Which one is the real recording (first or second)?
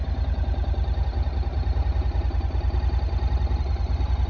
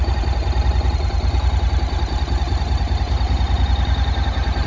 first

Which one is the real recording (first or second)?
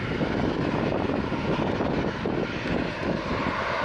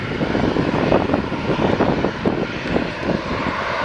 first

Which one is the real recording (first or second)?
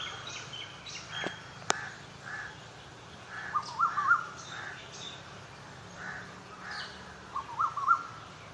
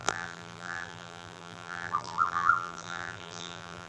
first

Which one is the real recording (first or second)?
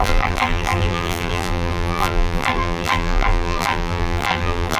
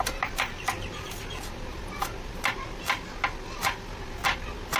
second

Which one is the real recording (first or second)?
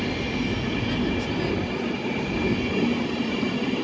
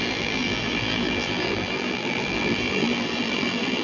first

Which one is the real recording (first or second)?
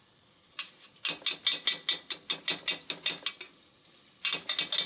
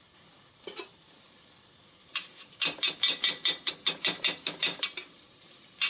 first